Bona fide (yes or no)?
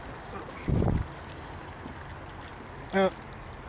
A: yes